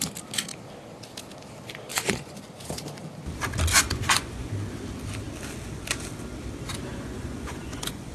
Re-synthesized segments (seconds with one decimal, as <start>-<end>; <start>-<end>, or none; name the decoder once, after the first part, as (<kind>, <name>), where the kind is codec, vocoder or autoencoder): 1.9-2.7 (vocoder, Vocos); 3.7-4.5; 6.9-8.1